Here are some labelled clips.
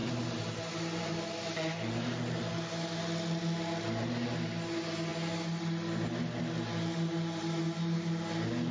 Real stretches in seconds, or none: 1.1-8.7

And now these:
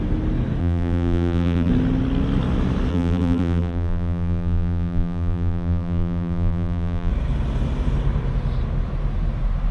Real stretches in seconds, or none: 0.0-0.6; 1.7-2.9; 7.1-9.7